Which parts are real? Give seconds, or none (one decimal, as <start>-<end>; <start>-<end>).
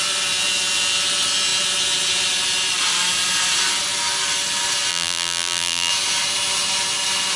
0.0-4.9; 5.9-7.4